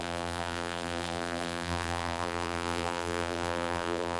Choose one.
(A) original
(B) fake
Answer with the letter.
B